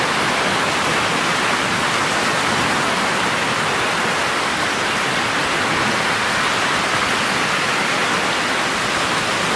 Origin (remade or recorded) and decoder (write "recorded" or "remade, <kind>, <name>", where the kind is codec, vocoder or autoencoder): recorded